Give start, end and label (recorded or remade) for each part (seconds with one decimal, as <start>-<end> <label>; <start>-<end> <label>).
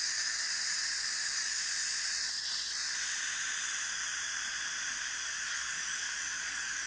0.0-0.5 remade; 0.5-1.0 recorded; 1.0-1.6 remade; 1.6-5.4 recorded; 5.4-6.9 remade